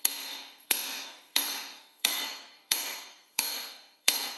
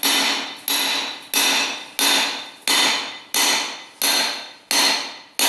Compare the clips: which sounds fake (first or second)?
first